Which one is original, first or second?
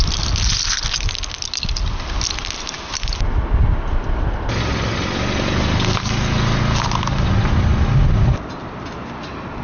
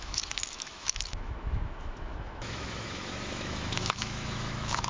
first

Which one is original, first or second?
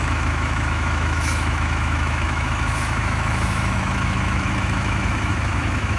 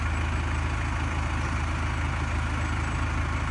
second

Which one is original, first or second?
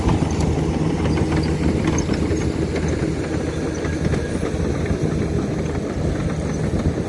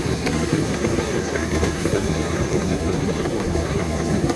first